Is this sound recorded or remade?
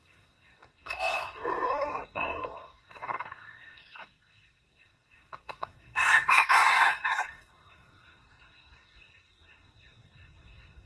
remade